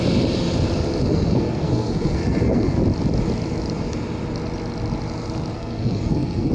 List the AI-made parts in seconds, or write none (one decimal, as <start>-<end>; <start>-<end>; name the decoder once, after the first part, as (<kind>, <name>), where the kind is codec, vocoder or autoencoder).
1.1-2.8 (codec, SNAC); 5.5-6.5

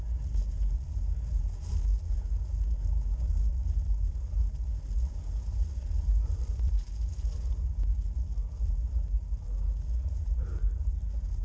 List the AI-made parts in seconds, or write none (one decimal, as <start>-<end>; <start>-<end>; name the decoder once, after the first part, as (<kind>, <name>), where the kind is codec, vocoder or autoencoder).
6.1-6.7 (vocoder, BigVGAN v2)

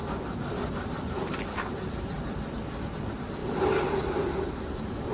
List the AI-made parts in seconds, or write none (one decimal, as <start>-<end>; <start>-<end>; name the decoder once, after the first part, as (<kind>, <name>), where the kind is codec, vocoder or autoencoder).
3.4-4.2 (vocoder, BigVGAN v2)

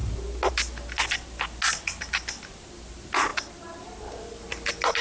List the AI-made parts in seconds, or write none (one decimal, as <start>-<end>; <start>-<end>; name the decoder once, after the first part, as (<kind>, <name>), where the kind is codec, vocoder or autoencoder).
none

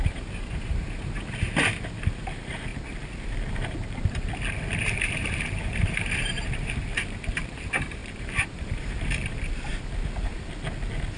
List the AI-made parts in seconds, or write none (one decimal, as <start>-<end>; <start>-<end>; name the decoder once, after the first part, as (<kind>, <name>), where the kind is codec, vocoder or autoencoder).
0.0-2.7 (vocoder, BigVGAN v2); 4.8-9.7

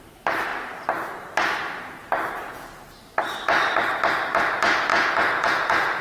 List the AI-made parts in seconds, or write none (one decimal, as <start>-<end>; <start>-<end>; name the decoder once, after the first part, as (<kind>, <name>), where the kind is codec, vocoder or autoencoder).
4.9-6.0 (vocoder, Vocos)

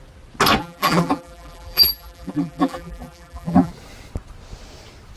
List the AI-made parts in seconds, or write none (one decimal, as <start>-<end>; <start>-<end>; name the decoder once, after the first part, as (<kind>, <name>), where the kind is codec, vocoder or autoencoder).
0.6-3.7 (vocoder, BigVGAN v2)